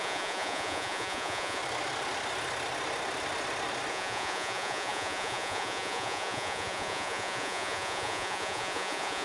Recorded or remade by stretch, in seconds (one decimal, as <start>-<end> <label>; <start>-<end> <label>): 0.0-1.6 remade; 1.6-3.9 recorded; 3.9-9.2 remade